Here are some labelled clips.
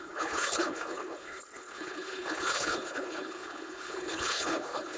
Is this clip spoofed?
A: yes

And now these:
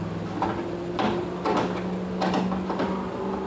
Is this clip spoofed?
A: no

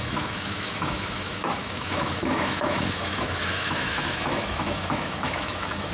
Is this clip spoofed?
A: yes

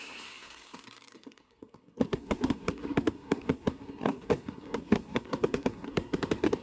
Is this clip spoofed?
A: yes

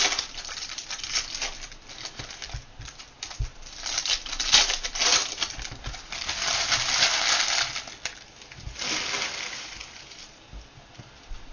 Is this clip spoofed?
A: no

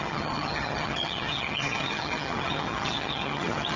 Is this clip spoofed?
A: yes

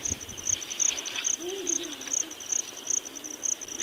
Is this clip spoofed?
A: no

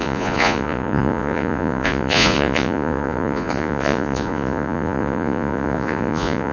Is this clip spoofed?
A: yes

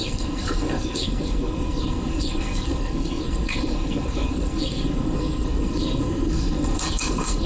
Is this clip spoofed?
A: yes